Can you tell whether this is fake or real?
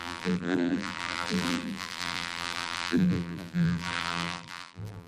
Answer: fake